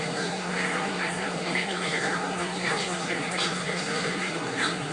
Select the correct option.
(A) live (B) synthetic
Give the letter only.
B